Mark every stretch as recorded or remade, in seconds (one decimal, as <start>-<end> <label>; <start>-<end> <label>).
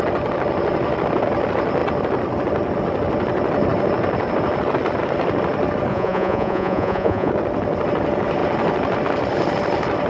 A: 0.0-5.9 recorded; 5.9-7.3 remade; 7.3-10.1 recorded